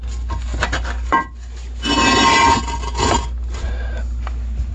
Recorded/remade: recorded